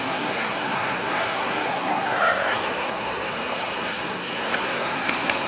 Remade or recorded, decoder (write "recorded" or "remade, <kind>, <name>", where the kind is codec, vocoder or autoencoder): remade, codec, SNAC